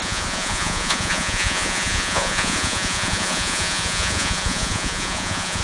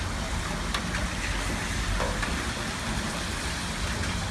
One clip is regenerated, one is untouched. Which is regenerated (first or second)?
first